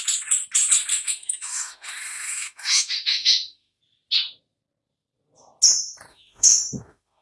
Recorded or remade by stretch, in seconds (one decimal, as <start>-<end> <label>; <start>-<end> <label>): 0.0-0.9 recorded; 0.9-3.8 remade; 3.8-6.1 recorded; 6.1-7.2 remade